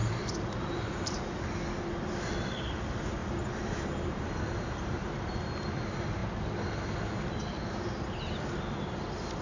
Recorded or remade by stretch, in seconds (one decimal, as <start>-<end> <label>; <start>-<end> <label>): 0.0-1.2 remade; 1.2-3.2 recorded; 3.2-5.5 remade; 5.5-9.4 recorded